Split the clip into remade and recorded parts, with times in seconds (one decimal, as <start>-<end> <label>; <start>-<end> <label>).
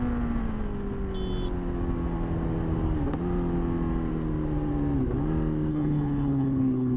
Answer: 0.0-5.7 recorded; 5.7-7.0 remade